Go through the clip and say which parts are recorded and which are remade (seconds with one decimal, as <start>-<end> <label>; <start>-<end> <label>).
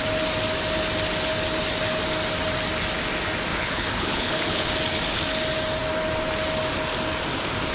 0.0-3.5 recorded; 3.5-4.7 remade; 4.7-7.7 recorded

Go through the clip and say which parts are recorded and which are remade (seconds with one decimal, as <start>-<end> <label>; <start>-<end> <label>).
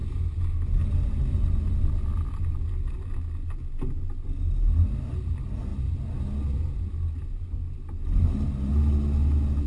0.0-9.7 recorded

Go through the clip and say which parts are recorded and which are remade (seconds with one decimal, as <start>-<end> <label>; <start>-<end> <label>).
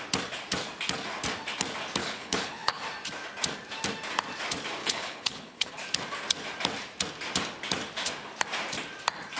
0.0-2.0 recorded; 2.0-2.8 remade; 2.8-4.8 recorded; 4.8-5.7 remade; 5.7-9.4 recorded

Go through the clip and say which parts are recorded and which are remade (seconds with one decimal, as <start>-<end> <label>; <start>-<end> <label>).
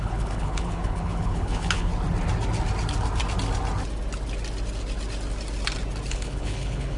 0.0-1.9 remade; 1.9-6.1 recorded; 6.1-7.0 remade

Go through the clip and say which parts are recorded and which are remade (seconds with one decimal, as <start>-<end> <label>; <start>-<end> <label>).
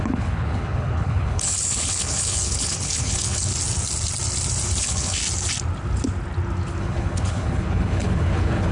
0.0-3.5 remade; 3.5-4.8 recorded; 4.8-5.2 remade; 5.2-6.8 recorded; 6.8-8.7 remade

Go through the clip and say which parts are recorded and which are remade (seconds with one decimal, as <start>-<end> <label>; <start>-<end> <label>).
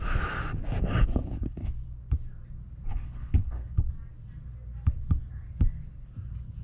0.0-1.2 recorded; 1.2-1.7 remade; 1.7-2.9 recorded; 2.9-3.9 remade; 3.9-6.6 recorded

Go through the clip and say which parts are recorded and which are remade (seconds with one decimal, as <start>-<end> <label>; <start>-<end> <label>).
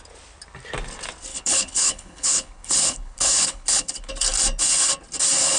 0.0-1.3 recorded; 1.3-4.1 remade; 4.1-5.6 recorded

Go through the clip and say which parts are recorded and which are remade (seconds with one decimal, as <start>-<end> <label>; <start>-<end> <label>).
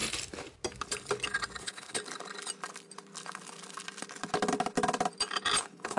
0.0-1.6 recorded; 1.6-2.0 remade; 2.0-5.6 recorded; 5.6-6.0 remade